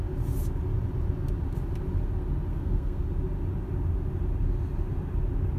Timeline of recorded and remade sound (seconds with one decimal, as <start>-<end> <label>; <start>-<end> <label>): 0.0-2.5 recorded; 2.5-3.1 remade; 3.1-5.6 recorded

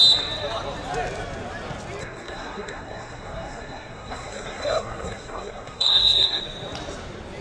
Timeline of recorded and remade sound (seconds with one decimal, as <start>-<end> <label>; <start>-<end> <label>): 0.0-2.0 recorded; 2.0-6.4 remade; 6.4-7.4 recorded

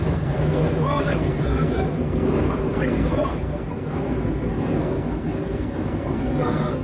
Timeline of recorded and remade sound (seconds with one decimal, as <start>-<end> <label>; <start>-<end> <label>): 0.0-6.8 remade